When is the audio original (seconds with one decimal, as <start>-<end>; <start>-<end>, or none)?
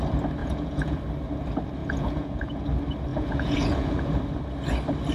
0.0-0.4; 1.0-1.8; 2.6-3.1; 4.2-5.1